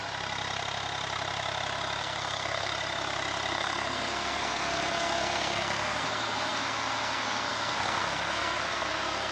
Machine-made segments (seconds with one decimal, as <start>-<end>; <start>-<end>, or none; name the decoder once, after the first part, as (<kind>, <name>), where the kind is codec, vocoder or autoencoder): 2.0-2.7 (codec, SNAC); 3.5-9.3